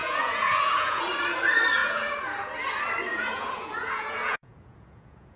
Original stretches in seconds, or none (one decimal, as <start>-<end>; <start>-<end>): 1.0-1.8; 2.5-3.1